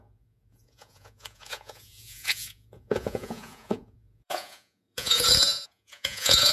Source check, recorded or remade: remade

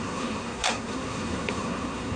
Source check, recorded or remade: remade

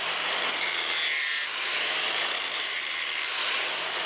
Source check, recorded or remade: recorded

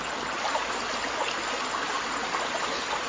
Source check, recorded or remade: recorded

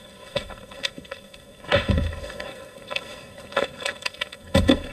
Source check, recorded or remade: remade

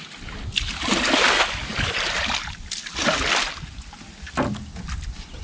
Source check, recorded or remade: recorded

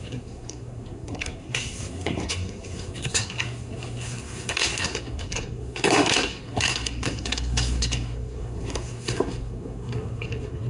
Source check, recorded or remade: remade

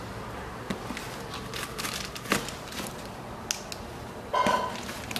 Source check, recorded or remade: recorded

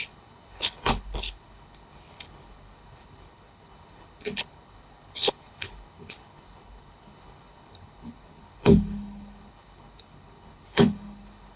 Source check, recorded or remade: remade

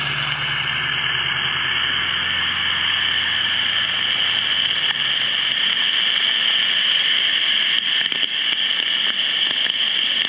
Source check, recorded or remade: recorded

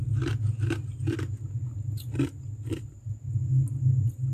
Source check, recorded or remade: recorded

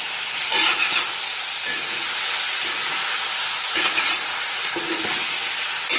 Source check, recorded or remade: recorded